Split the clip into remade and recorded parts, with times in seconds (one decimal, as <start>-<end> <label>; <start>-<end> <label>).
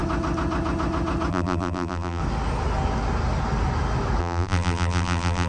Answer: 0.0-1.3 recorded; 1.3-2.2 remade; 2.2-4.2 recorded; 4.2-5.5 remade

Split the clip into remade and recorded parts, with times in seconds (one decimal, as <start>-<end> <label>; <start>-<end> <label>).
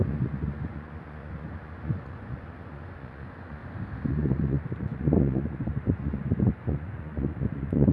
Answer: 0.0-3.6 remade; 3.6-4.1 recorded; 4.1-7.9 remade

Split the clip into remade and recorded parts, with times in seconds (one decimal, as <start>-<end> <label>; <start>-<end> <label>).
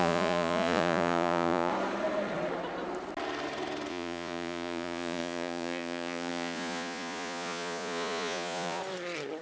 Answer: 0.0-1.7 remade; 1.7-3.9 recorded; 3.9-8.8 remade; 8.8-9.4 recorded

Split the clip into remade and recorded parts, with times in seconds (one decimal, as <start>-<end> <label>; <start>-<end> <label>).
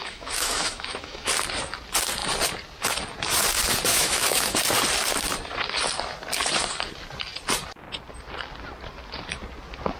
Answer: 0.0-1.3 remade; 1.3-3.9 recorded; 3.9-4.6 remade; 4.6-10.0 recorded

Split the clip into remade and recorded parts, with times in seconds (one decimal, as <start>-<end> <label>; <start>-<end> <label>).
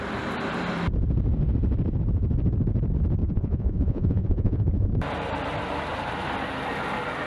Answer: 0.0-3.2 recorded; 3.2-4.9 remade; 4.9-7.3 recorded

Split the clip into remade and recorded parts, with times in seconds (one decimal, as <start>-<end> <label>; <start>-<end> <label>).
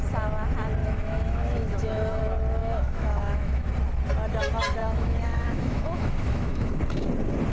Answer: 0.0-0.8 recorded; 0.8-2.2 remade; 2.2-2.6 recorded; 2.6-3.7 remade; 3.7-4.8 recorded; 4.8-6.8 remade; 6.8-7.5 recorded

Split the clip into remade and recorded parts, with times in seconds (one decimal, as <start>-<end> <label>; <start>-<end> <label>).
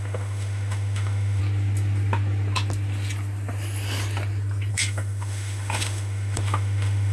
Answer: 0.0-1.4 remade; 1.4-4.7 recorded; 4.7-7.1 remade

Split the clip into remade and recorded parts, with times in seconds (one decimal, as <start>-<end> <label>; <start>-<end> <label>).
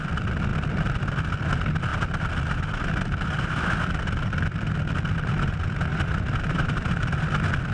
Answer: 0.0-5.9 recorded; 5.9-6.9 remade; 6.9-7.7 recorded